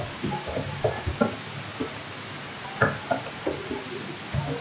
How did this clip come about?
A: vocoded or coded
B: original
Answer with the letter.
B